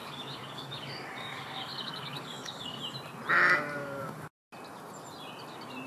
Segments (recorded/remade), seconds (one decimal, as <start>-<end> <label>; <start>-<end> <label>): 0.0-2.8 remade; 2.8-3.8 recorded; 3.8-4.3 remade; 4.3-5.9 recorded